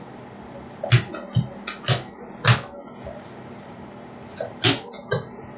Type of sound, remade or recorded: recorded